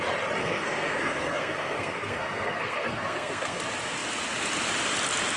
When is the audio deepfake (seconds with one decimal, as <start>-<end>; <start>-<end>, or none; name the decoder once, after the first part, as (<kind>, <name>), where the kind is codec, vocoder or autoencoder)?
0.4-3.6 (codec, SNAC)